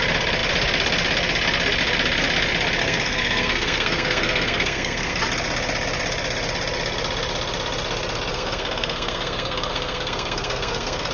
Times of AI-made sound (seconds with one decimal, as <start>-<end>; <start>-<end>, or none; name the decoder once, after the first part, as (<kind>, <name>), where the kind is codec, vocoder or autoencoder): 2.8-5.2 (codec, SNAC); 8.3-11.1